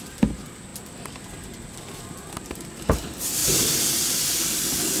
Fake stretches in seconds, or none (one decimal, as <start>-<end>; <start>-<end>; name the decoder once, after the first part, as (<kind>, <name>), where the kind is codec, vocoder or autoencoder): none